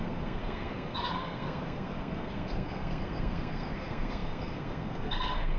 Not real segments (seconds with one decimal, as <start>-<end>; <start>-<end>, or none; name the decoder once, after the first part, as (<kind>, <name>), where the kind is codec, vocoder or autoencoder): 0.0-5.6 (codec, SNAC)